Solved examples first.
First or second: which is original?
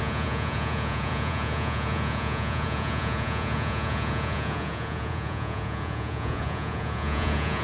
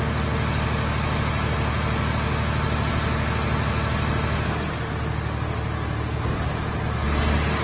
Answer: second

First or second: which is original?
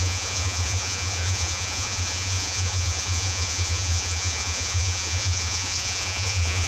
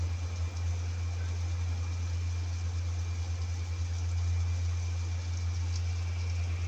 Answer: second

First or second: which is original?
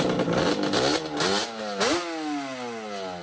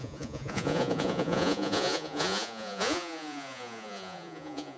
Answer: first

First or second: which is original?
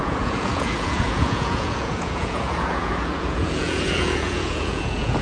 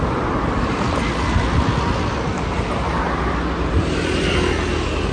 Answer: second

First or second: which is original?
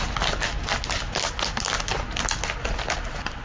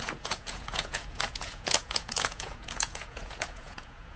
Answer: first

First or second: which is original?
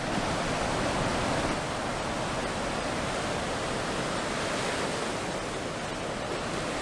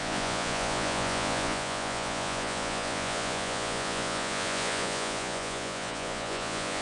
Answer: first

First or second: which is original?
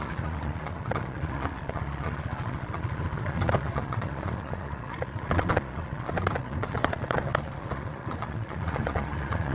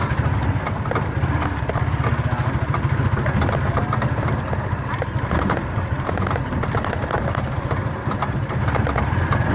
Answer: second